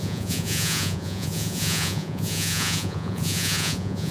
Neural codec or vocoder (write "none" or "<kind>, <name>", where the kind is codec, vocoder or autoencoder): vocoder, Vocos